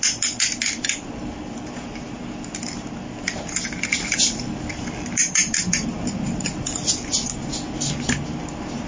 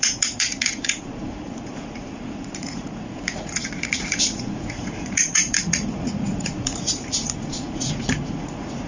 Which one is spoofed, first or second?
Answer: second